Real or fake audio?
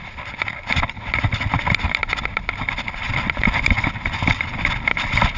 real